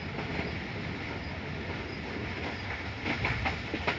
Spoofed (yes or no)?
no